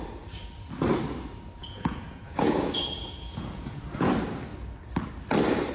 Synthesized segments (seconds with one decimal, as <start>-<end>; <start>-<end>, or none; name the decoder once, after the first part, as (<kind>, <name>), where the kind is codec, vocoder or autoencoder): 1.6-4.1 (vocoder, Vocos)